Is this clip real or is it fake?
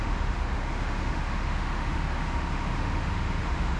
fake